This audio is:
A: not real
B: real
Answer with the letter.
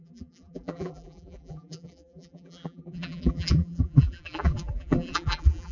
A